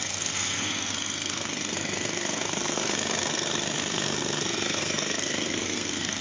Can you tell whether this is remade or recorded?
remade